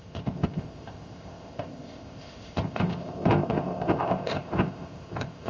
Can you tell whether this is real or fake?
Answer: fake